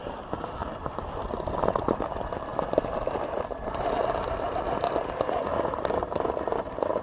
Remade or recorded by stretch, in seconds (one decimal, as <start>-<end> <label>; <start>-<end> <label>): 0.0-7.0 recorded

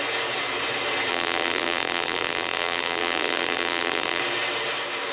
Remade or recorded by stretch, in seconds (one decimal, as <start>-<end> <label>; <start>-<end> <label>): 0.0-1.1 recorded; 1.1-4.2 remade; 4.2-5.1 recorded